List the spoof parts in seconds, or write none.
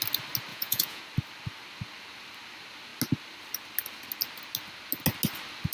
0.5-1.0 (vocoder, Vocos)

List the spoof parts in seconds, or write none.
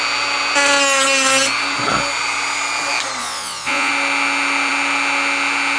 3.2-3.9 (vocoder, Vocos)